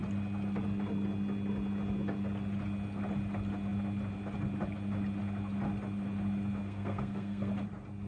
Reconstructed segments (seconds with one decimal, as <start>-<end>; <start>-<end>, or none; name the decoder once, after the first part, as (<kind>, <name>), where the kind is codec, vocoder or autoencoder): 6.6-7.5 (codec, SNAC)